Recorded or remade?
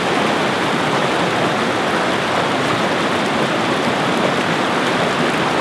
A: recorded